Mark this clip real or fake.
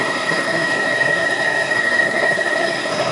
fake